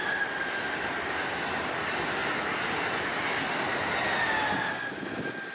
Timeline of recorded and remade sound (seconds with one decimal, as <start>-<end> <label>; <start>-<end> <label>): 0.0-5.5 recorded